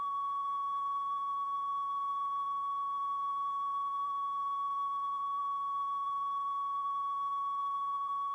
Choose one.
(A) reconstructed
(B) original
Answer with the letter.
A